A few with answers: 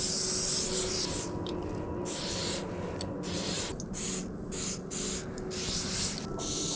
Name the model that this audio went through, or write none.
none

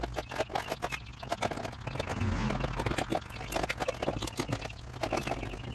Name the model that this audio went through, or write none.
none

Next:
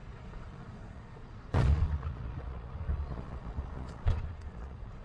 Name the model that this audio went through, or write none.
vocoder, Vocos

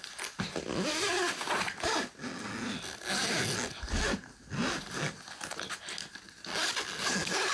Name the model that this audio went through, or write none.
none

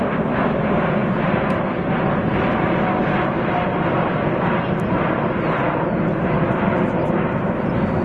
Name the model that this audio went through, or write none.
none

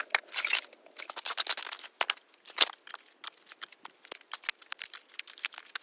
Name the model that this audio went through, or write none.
none